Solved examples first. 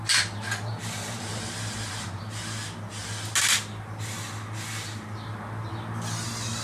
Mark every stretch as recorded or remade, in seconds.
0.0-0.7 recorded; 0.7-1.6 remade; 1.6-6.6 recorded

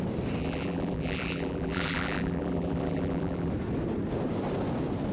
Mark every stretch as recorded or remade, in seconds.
0.0-0.4 recorded; 0.4-3.5 remade; 3.5-5.1 recorded

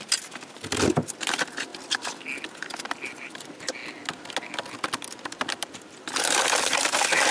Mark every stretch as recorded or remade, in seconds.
0.0-1.7 remade; 1.7-2.5 recorded; 2.5-3.8 remade; 3.8-4.6 recorded; 4.6-7.3 remade